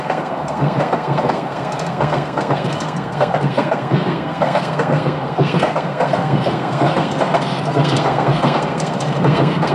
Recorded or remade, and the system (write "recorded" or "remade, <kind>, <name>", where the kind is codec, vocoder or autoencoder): remade, codec, SNAC